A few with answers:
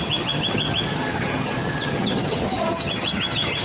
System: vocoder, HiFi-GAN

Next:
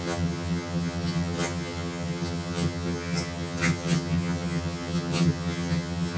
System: vocoder, HiFi-GAN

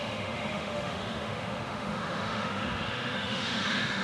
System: autoencoder, DAC-VAE